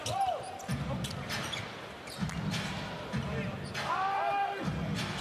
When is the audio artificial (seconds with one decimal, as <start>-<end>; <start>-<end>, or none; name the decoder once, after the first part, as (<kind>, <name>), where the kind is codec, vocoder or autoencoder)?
0.6-1.1 (vocoder, BigVGAN v2)